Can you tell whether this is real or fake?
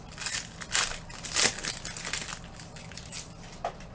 real